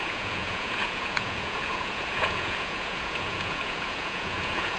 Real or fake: fake